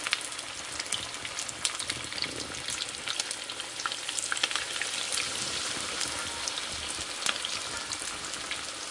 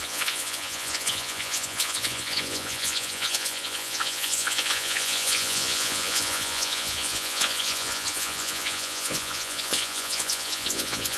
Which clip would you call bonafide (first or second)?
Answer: first